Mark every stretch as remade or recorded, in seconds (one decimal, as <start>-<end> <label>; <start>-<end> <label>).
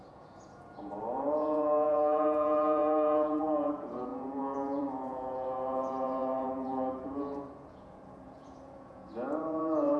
0.0-10.0 remade